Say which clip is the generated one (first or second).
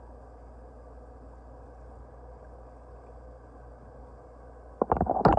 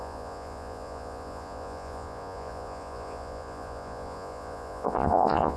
second